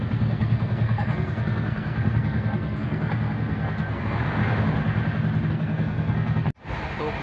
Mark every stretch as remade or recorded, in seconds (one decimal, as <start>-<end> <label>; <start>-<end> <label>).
0.0-4.4 remade; 4.4-5.5 recorded; 5.5-6.5 remade; 6.5-7.2 recorded